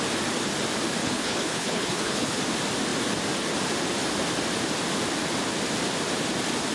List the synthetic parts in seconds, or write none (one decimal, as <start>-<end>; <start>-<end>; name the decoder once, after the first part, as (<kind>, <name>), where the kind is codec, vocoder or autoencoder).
1.0-2.4 (codec, HILCodec)